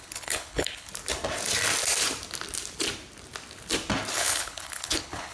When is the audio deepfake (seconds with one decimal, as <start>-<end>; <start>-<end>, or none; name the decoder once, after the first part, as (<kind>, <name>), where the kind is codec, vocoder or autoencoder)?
0.0-0.9 (codec, HILCodec); 4.1-5.3

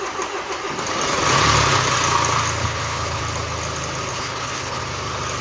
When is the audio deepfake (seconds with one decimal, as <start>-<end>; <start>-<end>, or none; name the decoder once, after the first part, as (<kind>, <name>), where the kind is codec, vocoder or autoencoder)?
2.6-3.2 (codec, HILCodec); 4.1-4.8